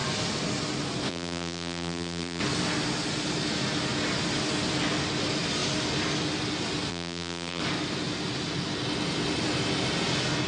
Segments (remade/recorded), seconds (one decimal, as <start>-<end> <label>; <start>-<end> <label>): 0.0-1.1 recorded; 1.1-2.4 remade; 2.4-6.9 recorded; 6.9-7.6 remade; 7.6-10.5 recorded